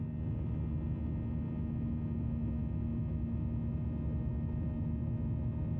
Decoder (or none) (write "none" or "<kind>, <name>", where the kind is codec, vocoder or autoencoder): none